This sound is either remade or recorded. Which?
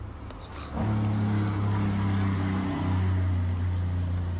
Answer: recorded